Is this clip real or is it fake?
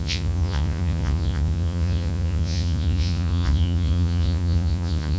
fake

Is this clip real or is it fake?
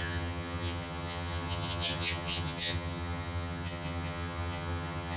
fake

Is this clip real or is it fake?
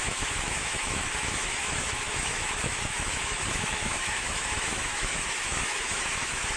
fake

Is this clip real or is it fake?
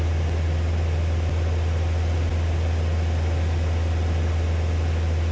real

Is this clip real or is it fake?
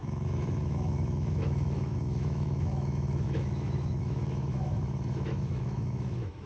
fake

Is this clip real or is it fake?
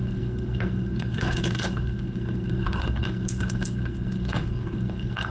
fake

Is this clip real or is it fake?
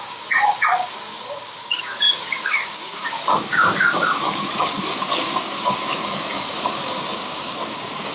fake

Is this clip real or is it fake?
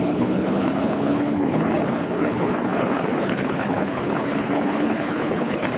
fake